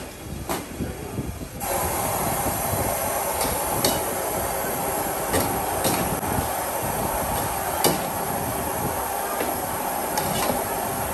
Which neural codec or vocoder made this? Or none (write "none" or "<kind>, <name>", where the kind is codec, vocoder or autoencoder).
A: none